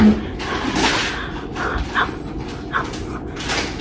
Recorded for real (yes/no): no